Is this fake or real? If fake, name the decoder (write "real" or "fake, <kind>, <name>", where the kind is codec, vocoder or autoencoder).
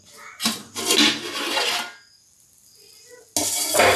real